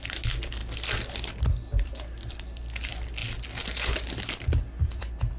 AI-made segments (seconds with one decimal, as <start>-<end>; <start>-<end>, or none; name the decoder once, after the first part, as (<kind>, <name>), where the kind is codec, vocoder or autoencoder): none

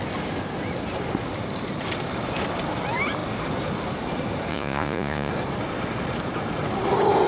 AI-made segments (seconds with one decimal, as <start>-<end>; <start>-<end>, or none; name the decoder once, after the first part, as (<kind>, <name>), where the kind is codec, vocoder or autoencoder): 4.5-5.3 (vocoder, Vocos)

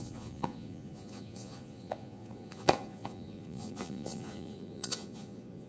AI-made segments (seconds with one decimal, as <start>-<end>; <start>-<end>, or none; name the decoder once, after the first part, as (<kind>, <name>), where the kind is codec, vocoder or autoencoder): 0.0-5.7 (vocoder, Vocos)

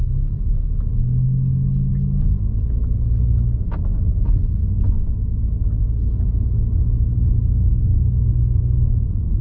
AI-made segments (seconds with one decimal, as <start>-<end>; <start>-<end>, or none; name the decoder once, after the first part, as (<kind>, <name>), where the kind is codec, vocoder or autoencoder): 0.9-1.9 (autoencoder, DAC-VAE)

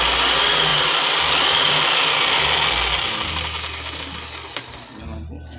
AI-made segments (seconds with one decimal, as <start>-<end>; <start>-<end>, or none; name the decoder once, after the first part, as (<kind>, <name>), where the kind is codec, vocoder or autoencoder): none

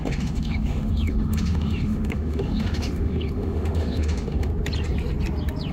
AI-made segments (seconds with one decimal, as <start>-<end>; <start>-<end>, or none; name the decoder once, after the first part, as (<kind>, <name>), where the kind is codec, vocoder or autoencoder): 0.0-4.5 (autoencoder, DAC-VAE)

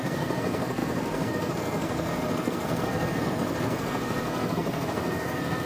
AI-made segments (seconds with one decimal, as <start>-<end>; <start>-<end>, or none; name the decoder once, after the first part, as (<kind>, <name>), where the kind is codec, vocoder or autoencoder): 0.0-5.7 (codec, SNAC)

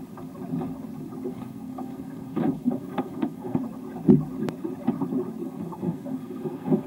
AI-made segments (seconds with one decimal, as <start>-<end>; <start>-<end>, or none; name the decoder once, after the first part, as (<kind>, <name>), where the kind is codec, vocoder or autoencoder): 1.3-3.6 (codec, SNAC); 5.4-6.9